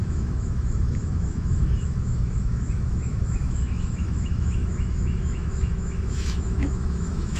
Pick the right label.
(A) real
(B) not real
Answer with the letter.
B